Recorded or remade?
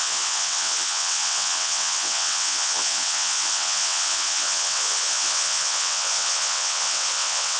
remade